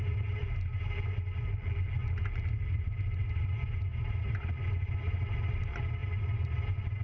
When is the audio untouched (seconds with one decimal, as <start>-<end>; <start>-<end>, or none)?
0.0-7.0